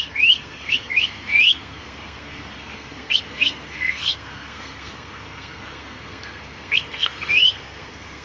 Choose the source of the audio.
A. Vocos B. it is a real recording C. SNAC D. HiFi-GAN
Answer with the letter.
C